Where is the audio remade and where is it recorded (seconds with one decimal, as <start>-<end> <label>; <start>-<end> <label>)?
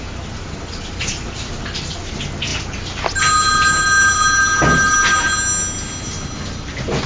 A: 0.0-7.1 recorded